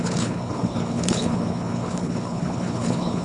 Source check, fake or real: fake